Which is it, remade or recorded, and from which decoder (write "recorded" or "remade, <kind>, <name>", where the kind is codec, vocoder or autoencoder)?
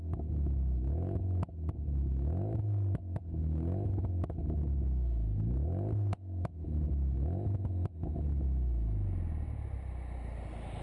recorded